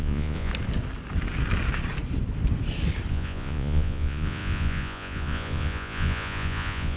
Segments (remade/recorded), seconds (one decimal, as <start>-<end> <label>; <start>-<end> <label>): 0.0-0.5 remade; 0.5-3.1 recorded; 3.1-7.0 remade